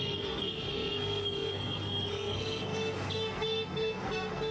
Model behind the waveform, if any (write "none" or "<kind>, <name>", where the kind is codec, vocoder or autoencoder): codec, SNAC